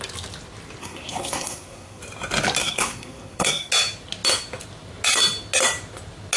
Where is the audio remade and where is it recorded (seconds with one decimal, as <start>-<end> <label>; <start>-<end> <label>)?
0.0-0.8 recorded; 0.8-2.0 remade; 2.0-2.6 recorded; 2.6-3.7 remade; 3.7-6.4 recorded